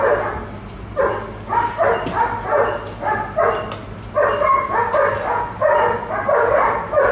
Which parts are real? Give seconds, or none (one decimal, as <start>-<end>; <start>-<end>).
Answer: 0.0-7.1